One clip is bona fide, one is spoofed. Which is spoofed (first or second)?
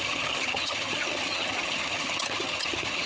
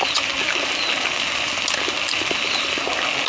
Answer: first